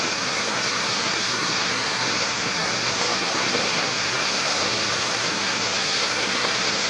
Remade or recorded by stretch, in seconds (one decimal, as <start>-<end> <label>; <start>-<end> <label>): 0.0-6.9 remade